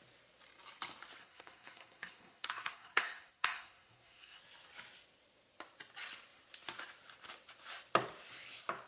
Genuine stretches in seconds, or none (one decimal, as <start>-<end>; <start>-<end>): 0.0-1.2; 4.4-8.9